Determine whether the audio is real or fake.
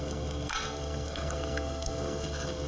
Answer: fake